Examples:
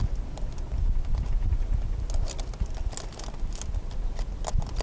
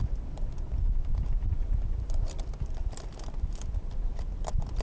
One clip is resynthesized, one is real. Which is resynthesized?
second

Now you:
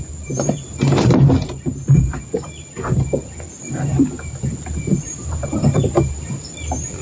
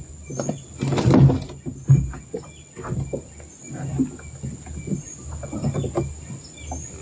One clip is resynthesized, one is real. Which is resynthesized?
first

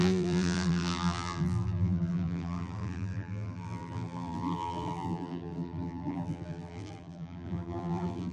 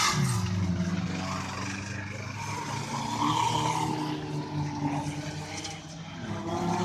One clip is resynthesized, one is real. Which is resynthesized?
first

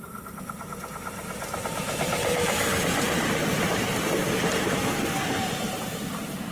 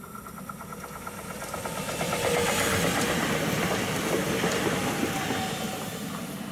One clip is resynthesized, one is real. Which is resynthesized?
first